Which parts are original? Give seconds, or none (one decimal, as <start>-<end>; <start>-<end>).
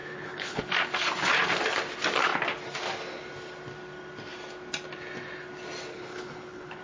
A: 0.6-5.9